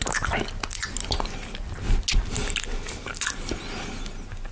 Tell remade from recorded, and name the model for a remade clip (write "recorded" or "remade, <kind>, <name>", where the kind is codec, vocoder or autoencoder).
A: recorded